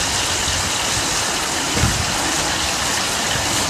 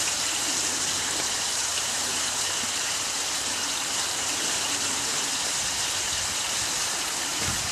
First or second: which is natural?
first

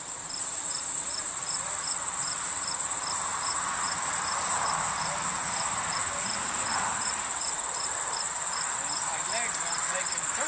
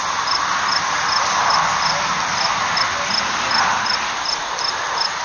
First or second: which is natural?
second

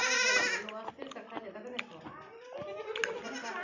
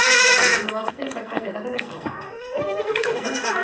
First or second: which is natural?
first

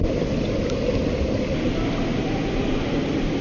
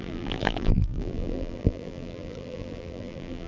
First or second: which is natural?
first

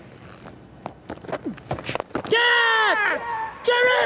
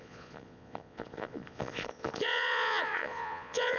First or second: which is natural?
first